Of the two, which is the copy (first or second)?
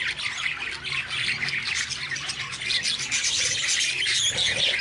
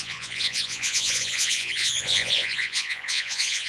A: second